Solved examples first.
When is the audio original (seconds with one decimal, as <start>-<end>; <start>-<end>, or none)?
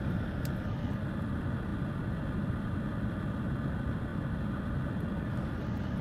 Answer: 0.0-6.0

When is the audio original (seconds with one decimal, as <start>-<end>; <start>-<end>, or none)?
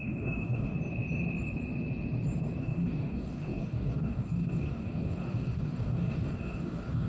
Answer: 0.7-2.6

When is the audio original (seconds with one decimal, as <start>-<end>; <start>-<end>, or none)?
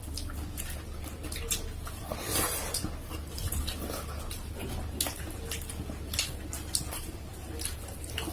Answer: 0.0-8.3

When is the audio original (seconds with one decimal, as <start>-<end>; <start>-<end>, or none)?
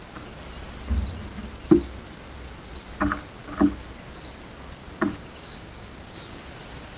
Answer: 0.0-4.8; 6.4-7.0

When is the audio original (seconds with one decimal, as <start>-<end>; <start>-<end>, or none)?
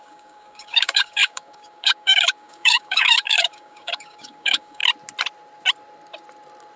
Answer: 4.8-6.8